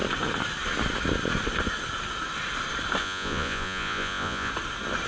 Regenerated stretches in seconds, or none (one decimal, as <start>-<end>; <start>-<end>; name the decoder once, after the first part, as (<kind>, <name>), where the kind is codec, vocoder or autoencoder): 3.0-4.5 (vocoder, Vocos)